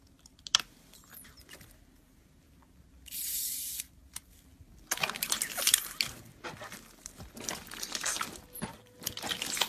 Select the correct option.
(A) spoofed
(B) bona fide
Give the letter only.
B